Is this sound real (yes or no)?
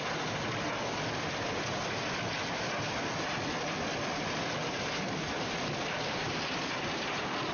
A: yes